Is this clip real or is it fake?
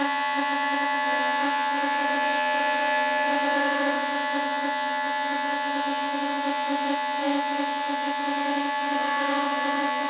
fake